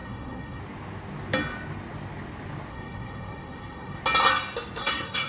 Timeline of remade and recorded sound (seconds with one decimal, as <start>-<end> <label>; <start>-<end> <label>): 0.0-0.6 remade; 0.6-2.7 recorded; 2.7-4.0 remade; 4.0-4.8 recorded; 4.8-5.3 remade